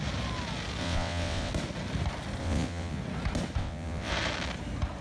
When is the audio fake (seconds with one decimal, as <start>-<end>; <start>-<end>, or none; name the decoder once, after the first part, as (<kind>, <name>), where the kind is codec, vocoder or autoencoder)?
0.8-1.5 (vocoder, WaveNeXt); 2.4-3.0; 3.6-4.1